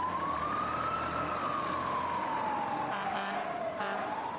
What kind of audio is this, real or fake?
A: real